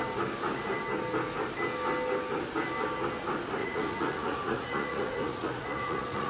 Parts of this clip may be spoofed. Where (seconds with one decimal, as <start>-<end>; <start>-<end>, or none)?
3.6-6.3